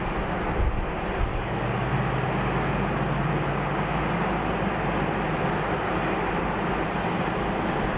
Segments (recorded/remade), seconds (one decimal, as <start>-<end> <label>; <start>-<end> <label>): 0.0-1.3 recorded; 1.3-1.9 remade; 1.9-8.0 recorded